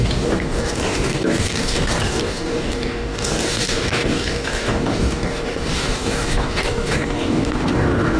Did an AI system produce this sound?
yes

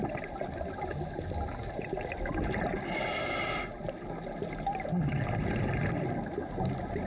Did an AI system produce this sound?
no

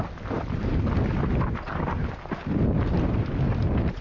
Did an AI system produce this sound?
no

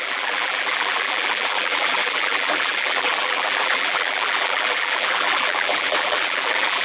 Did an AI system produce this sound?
yes